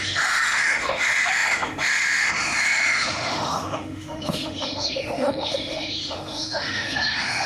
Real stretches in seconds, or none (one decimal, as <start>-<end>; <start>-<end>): none